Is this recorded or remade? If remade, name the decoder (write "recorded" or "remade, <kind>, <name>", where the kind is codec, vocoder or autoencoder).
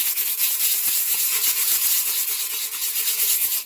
remade, vocoder, Vocos